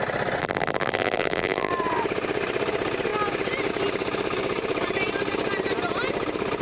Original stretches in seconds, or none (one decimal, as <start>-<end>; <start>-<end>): 0.0-0.4; 1.7-6.6